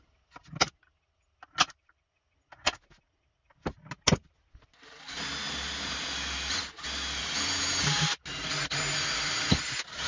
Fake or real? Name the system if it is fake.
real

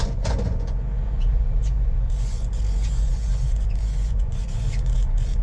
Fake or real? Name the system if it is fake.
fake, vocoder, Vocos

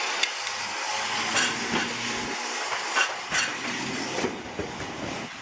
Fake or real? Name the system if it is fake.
real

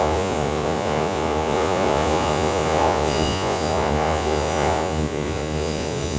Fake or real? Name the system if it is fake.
fake, vocoder, Vocos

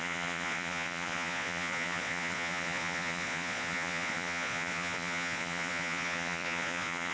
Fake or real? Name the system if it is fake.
fake, vocoder, Vocos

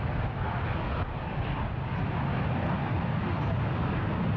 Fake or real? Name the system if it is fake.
real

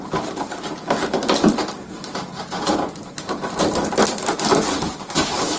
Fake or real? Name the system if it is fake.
real